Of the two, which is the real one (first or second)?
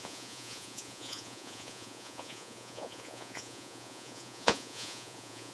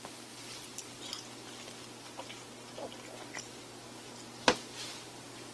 second